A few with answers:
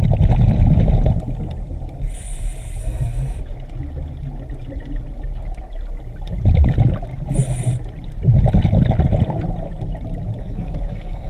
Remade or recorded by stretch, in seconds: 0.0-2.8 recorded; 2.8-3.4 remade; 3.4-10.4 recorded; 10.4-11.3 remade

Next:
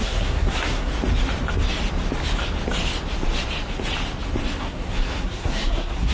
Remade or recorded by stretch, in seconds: 0.0-0.9 remade; 0.9-4.6 recorded; 4.6-6.1 remade

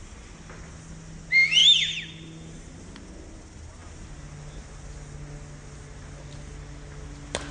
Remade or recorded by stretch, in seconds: 0.0-7.5 recorded

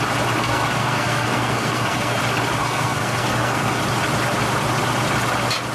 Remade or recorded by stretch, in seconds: 0.0-0.4 recorded; 0.4-2.2 remade; 2.2-2.6 recorded; 2.6-3.8 remade; 3.8-5.7 recorded

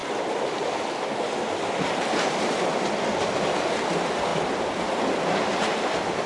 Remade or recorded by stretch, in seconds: 0.0-6.3 recorded

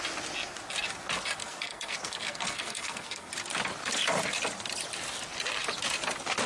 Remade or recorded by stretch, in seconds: 0.0-1.4 recorded; 1.4-3.3 remade; 3.3-6.5 recorded

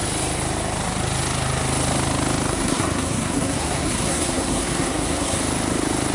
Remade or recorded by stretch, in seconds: 0.0-2.5 recorded; 2.5-5.4 remade; 5.4-6.1 recorded